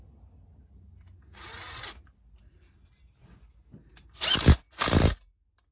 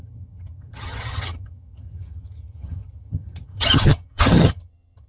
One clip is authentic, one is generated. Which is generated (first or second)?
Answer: second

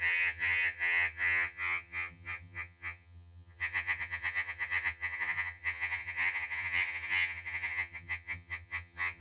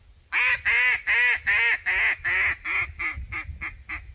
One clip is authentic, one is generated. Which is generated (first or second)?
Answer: first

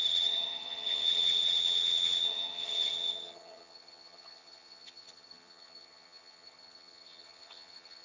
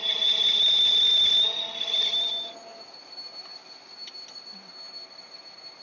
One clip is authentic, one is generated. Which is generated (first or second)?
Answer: first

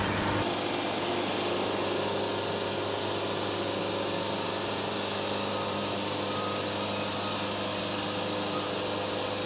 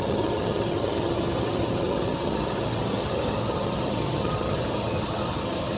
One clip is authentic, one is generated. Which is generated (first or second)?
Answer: second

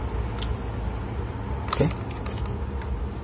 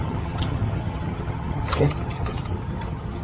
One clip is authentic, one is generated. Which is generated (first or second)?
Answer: second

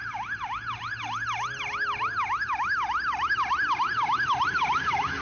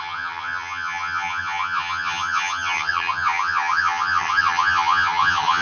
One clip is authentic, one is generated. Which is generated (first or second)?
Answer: second